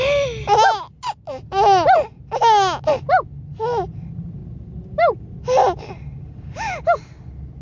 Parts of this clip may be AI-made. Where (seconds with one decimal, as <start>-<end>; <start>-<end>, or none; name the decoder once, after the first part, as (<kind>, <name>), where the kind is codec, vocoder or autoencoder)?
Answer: none